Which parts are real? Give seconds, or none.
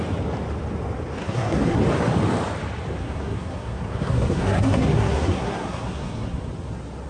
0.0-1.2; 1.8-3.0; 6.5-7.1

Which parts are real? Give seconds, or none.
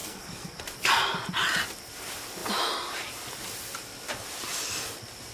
0.6-5.3